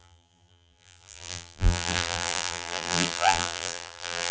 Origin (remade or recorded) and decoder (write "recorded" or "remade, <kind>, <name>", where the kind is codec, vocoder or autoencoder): remade, vocoder, BigVGAN v2